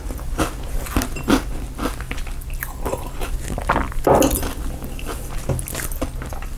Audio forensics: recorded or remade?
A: recorded